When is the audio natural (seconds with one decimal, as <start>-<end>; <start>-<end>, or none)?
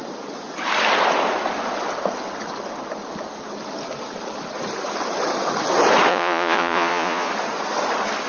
0.0-6.1; 7.3-8.3